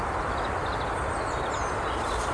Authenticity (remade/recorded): recorded